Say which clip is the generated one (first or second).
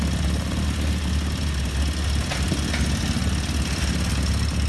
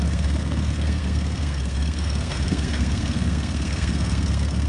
second